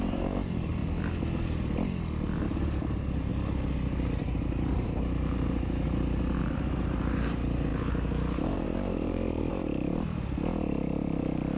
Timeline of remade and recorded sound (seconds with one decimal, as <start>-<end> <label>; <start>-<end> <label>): 0.0-0.8 remade; 0.8-2.4 recorded; 2.4-3.3 remade; 3.3-4.2 recorded; 4.2-11.6 remade